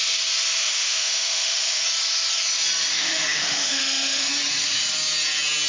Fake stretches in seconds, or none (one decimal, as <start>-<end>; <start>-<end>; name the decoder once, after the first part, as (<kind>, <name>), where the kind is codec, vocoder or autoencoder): 0.6-1.8 (autoencoder, DAC-VAE); 2.9-4.3